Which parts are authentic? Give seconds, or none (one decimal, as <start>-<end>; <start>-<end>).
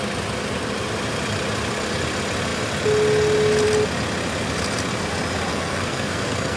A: 0.0-5.5